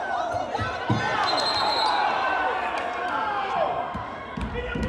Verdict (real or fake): real